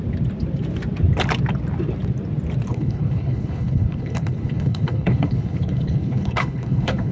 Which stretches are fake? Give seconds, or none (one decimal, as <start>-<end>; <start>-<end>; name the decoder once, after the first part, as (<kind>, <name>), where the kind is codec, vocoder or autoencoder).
2.7-7.1 (codec, HILCodec)